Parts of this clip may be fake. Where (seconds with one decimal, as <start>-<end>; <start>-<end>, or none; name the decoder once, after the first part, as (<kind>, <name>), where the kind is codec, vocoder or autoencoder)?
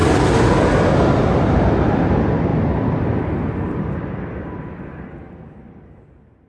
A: none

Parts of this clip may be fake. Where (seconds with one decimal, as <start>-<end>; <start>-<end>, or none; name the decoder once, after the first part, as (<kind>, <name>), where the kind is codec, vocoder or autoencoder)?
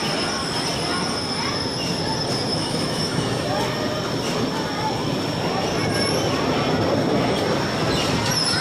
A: 2.5-3.4 (autoencoder, DAC-VAE)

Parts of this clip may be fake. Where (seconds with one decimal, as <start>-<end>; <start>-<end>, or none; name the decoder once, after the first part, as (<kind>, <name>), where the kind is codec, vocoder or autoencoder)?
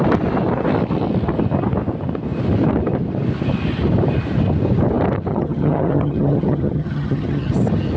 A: 5.3-7.5 (vocoder, HiFi-GAN)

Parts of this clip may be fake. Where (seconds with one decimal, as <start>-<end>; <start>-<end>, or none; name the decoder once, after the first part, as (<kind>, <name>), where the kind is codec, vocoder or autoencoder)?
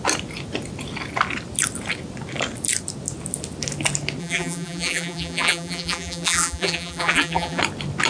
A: 4.2-7.6 (vocoder, BigVGAN v2)